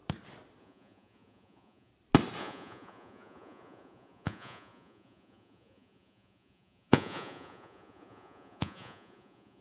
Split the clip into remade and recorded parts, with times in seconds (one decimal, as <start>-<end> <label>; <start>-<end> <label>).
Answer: 0.0-0.6 recorded; 0.6-1.9 remade; 1.9-2.4 recorded; 2.4-9.6 remade